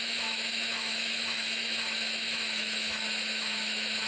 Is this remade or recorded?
remade